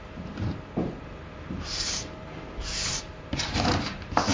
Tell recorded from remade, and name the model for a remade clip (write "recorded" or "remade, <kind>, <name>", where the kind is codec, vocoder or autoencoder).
remade, vocoder, BigVGAN v2